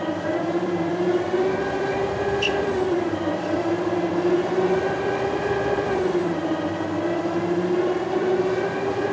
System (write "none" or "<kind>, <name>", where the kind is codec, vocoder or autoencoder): vocoder, BigVGAN v2